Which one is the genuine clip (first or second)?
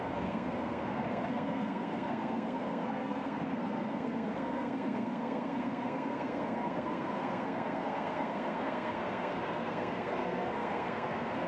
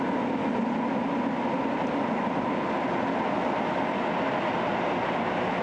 second